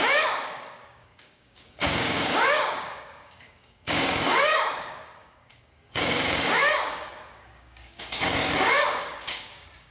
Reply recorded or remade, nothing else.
remade